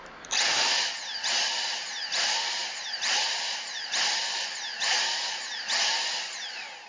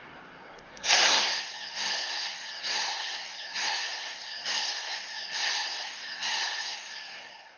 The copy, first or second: second